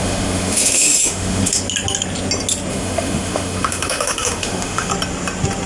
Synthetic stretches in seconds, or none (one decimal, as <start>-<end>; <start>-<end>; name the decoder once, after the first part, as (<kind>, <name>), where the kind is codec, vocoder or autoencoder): 0.0-1.6 (autoencoder, DAC-VAE); 2.7-4.9